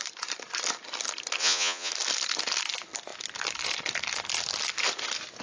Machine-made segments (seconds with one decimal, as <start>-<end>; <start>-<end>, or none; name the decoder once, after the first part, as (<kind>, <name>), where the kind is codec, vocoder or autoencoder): 1.4-1.9 (vocoder, Vocos)